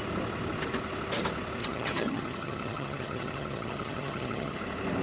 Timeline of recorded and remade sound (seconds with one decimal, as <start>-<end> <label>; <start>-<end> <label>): 0.0-1.6 recorded; 1.6-4.6 remade; 4.6-5.0 recorded